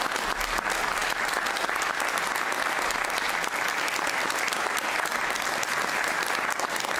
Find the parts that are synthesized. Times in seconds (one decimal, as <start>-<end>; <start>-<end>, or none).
none